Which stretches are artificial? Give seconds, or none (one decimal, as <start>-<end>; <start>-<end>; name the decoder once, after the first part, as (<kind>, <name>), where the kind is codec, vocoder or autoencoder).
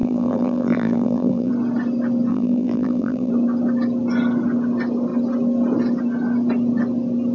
0.0-1.5 (vocoder, BigVGAN v2); 2.3-3.3